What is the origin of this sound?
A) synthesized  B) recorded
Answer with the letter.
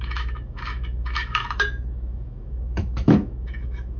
A